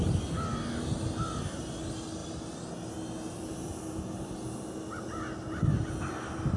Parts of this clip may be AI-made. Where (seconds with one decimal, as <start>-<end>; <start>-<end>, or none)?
none